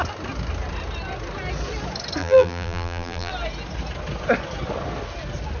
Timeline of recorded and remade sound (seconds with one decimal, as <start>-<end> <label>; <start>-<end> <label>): 0.0-2.2 recorded; 2.2-3.3 remade; 3.3-5.6 recorded